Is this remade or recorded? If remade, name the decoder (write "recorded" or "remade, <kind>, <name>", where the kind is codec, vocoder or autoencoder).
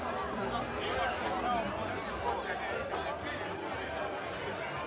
recorded